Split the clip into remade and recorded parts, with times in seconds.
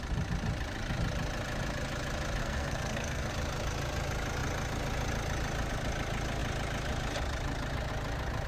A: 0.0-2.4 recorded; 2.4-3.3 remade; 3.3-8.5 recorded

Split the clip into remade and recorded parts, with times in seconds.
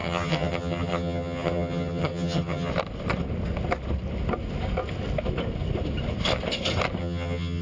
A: 0.0-2.7 remade; 2.7-7.0 recorded; 7.0-7.6 remade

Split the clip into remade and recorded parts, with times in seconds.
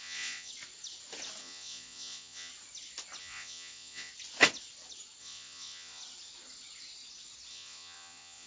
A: 0.0-0.5 remade; 0.5-1.4 recorded; 1.4-2.5 remade; 2.5-3.2 recorded; 3.2-4.1 remade; 4.1-5.2 recorded; 5.2-6.0 remade; 6.0-7.5 recorded; 7.5-8.5 remade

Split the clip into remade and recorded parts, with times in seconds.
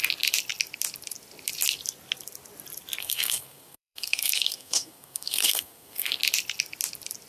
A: 0.0-3.0 recorded; 3.0-6.2 remade; 6.2-7.3 recorded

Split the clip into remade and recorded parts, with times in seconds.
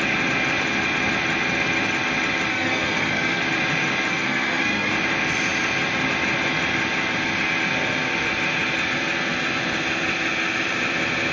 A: 0.0-2.5 recorded; 2.5-3.4 remade; 3.4-4.1 recorded; 4.1-4.9 remade; 4.9-11.3 recorded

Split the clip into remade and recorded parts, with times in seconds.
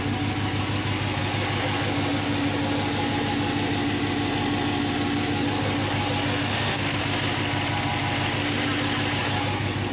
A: 0.0-6.5 recorded; 6.5-7.0 remade; 7.0-9.9 recorded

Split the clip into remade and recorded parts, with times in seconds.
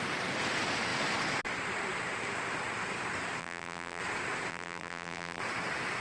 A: 0.0-3.4 recorded; 3.4-4.0 remade; 4.0-4.5 recorded; 4.5-5.4 remade; 5.4-6.0 recorded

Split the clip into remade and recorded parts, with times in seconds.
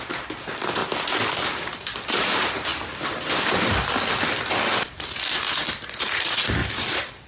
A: 0.0-0.8 remade; 0.8-1.8 recorded; 1.8-2.7 remade; 2.7-5.7 recorded; 5.7-7.3 remade